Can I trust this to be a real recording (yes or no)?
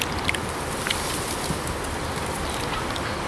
yes